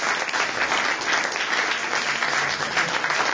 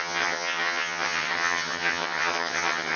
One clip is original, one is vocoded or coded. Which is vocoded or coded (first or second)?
second